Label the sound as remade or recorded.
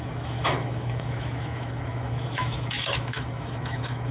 remade